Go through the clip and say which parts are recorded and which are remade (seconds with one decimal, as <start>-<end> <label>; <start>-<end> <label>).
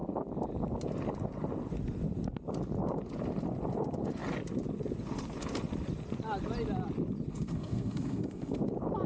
0.0-7.3 recorded; 7.3-8.6 remade; 8.6-9.1 recorded